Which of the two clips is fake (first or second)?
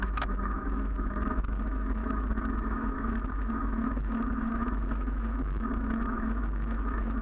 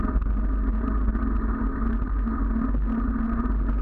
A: first